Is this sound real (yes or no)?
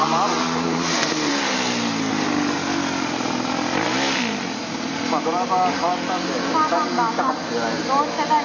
yes